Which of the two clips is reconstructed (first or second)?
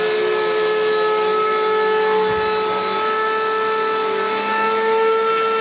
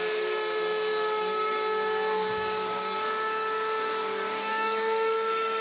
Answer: second